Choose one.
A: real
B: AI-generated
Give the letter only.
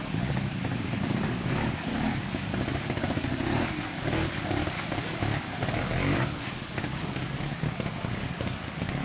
B